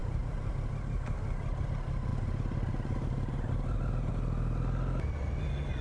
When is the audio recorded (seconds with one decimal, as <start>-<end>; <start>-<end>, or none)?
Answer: 1.7-5.8